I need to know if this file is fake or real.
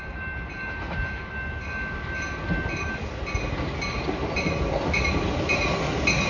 real